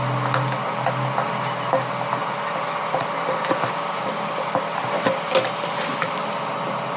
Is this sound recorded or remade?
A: recorded